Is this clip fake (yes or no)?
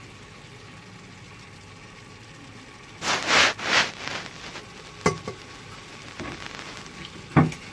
no